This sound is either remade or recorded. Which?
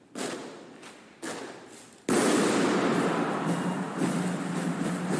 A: recorded